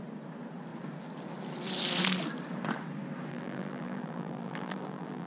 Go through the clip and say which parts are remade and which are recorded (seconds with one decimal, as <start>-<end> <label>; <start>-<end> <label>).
0.0-3.3 recorded; 3.3-5.3 remade